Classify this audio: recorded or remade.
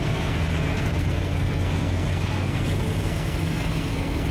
remade